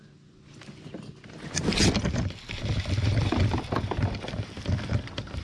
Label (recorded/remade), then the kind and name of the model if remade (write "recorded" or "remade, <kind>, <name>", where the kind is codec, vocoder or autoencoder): recorded